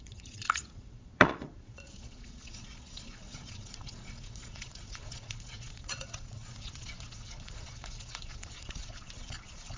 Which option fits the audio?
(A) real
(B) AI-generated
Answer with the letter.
B